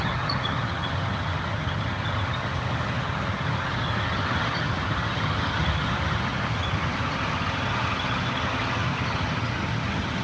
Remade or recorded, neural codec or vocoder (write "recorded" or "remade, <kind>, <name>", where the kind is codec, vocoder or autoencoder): remade, vocoder, HiFi-GAN